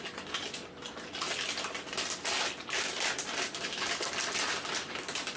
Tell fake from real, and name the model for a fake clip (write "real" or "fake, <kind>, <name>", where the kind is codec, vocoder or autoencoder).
real